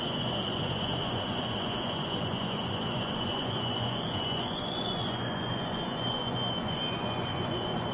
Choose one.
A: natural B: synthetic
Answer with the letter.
B